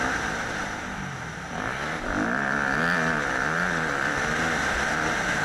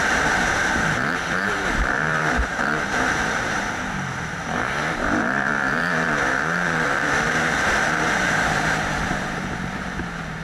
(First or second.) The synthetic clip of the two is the second